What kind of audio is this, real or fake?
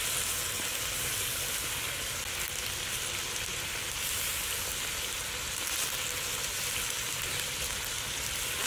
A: real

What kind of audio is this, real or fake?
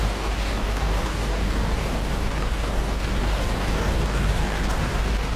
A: fake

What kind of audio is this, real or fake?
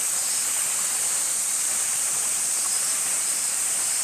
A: fake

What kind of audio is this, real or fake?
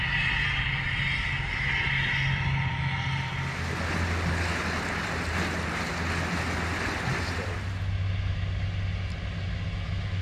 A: real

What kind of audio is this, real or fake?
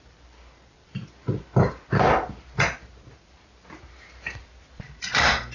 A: real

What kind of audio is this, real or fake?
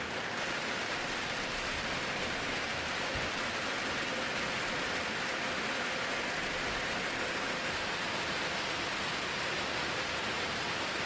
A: real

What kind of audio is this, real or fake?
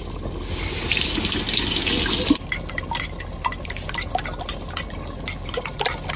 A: real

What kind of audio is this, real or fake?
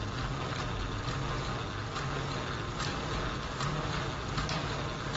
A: real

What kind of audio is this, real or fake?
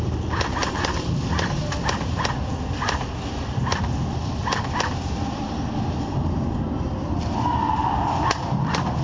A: real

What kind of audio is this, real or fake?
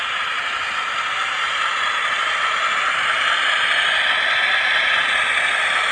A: real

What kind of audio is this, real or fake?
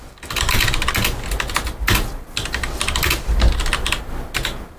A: real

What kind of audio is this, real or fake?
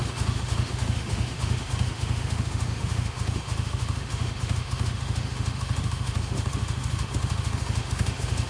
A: fake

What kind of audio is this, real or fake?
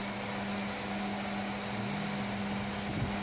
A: real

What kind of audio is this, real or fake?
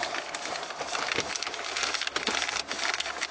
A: real